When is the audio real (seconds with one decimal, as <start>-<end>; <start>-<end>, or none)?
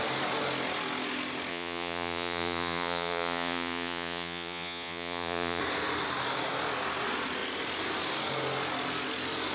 0.0-1.5; 5.6-9.5